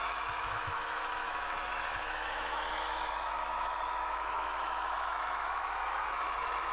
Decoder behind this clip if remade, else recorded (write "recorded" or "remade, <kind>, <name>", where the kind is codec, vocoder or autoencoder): remade, autoencoder, DAC-VAE